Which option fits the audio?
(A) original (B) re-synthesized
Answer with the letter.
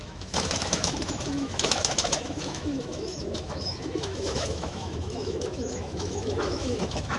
B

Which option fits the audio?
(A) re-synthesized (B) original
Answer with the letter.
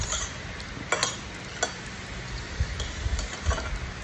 B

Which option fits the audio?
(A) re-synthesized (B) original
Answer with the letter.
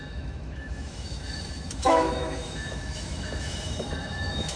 A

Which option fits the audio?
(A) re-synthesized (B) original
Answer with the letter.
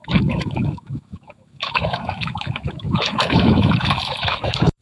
A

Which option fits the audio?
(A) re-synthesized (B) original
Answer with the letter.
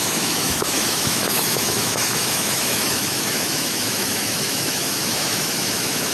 A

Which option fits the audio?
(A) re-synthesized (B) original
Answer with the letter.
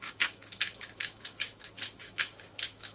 A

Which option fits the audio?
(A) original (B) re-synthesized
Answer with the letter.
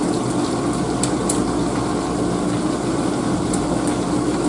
A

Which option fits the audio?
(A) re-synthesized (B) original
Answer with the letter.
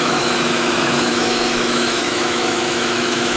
A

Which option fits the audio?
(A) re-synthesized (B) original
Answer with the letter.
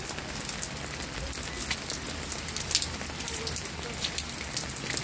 B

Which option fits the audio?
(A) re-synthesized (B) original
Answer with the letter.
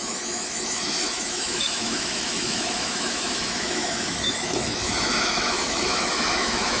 A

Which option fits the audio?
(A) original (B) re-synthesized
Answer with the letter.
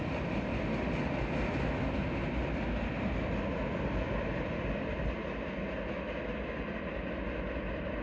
A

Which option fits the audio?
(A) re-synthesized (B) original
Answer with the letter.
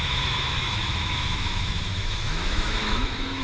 A